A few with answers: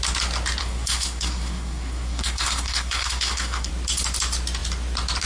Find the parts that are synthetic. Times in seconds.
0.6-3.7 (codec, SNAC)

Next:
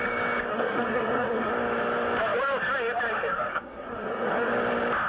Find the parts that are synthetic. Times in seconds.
0.5-1.5 (codec, SNAC); 3.5-4.5

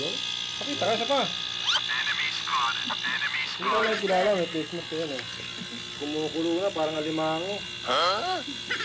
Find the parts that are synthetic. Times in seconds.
none

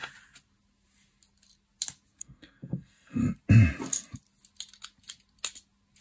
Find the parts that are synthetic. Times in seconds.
2.2-3.2 (codec, SNAC)